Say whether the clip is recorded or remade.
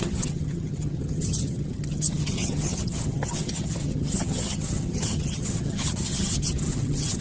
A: remade